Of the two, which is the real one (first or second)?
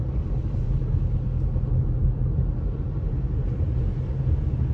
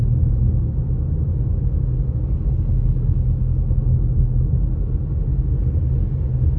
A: second